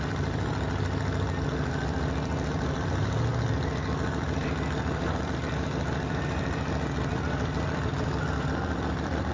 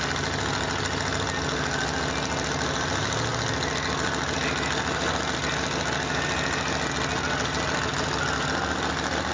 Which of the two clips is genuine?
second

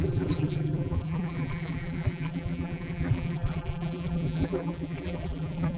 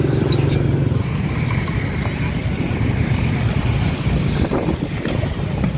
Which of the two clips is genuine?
second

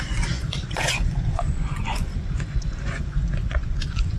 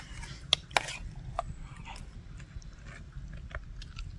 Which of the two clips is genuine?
second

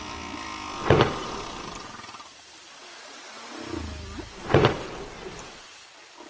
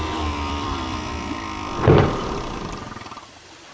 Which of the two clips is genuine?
first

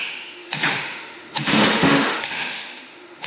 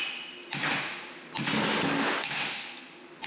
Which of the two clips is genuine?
second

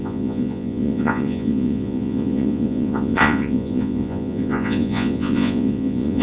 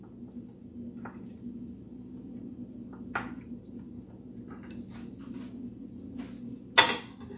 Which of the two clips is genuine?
second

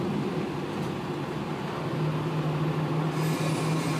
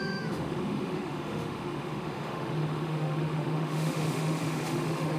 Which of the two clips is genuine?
first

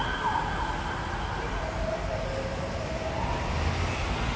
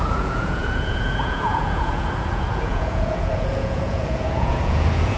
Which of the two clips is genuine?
first